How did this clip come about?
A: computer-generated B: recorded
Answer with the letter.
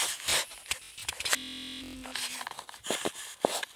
B